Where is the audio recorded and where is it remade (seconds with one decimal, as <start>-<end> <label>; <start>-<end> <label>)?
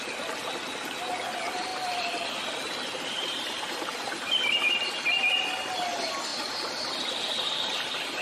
0.0-1.7 recorded; 1.7-4.9 remade; 4.9-6.3 recorded; 6.3-7.5 remade; 7.5-8.2 recorded